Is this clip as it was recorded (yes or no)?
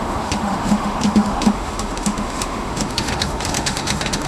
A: no